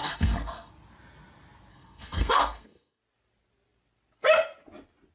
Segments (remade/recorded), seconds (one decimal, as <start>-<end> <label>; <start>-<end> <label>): 0.0-0.7 remade; 0.7-1.7 recorded; 1.7-3.0 remade; 3.0-5.1 recorded